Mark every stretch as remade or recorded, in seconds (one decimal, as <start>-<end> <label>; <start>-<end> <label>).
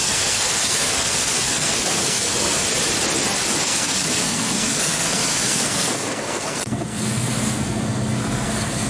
0.0-2.6 remade; 2.6-3.6 recorded; 3.6-8.9 remade